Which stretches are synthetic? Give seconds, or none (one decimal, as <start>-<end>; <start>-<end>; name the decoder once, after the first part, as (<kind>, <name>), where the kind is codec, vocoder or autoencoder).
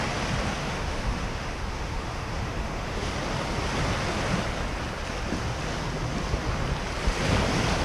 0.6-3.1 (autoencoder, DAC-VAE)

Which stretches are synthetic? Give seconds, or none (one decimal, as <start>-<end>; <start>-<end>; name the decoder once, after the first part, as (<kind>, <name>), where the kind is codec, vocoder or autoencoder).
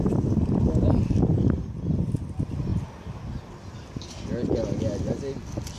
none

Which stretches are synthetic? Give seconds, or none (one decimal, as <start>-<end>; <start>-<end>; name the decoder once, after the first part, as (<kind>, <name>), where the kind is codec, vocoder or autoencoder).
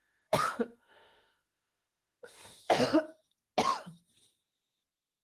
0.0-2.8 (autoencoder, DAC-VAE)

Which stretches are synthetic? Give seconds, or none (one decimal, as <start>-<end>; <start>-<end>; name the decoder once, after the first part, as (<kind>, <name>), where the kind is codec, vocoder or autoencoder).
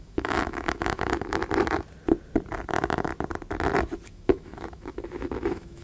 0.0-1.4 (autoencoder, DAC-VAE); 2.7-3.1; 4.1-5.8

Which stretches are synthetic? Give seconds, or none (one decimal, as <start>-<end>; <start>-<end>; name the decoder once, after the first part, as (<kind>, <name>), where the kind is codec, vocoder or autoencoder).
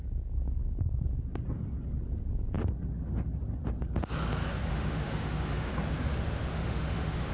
4.7-5.7 (autoencoder, DAC-VAE); 6.5-7.3